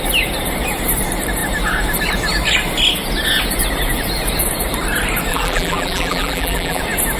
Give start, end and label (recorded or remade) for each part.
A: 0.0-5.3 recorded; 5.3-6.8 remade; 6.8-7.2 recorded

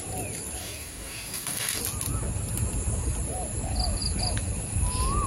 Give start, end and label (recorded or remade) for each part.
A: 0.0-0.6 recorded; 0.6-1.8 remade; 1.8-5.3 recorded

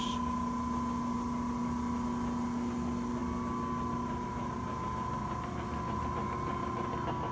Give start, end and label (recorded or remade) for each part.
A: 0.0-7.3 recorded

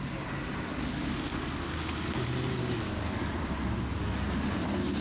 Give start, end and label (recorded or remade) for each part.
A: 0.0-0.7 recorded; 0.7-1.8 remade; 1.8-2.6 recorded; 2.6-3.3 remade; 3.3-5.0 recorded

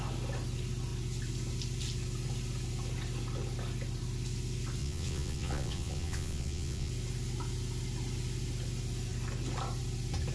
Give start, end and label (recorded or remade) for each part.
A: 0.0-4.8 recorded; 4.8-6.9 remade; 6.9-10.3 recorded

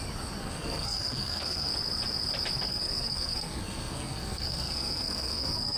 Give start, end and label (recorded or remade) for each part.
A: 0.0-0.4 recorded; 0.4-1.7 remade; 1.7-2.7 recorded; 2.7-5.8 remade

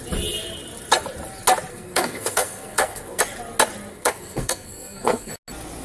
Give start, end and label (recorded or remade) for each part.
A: 0.0-1.7 recorded; 1.7-3.2 remade; 3.2-3.9 recorded; 3.9-5.3 remade; 5.3-5.8 recorded